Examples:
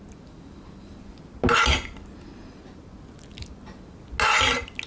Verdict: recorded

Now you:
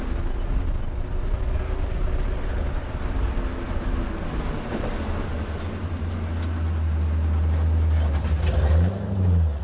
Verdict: recorded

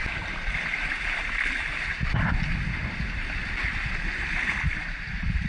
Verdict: recorded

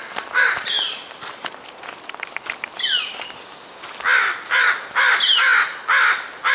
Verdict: recorded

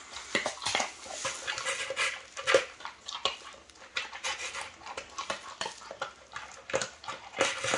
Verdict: recorded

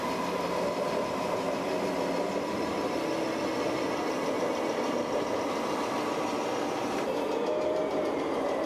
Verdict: recorded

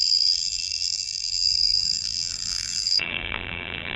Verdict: remade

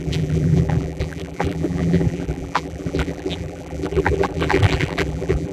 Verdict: remade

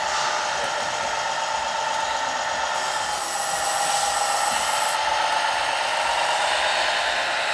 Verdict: recorded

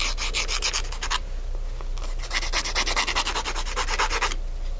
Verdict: recorded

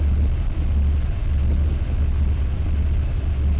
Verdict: recorded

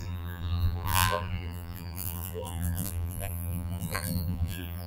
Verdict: remade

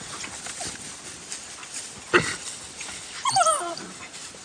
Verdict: remade